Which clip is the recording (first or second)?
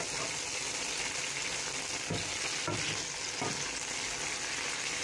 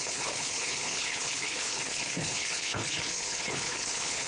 first